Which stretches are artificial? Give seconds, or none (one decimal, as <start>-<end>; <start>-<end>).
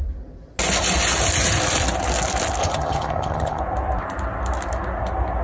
2.6-3.6